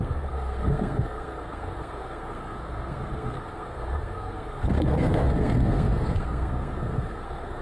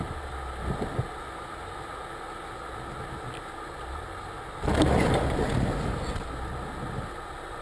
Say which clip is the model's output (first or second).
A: first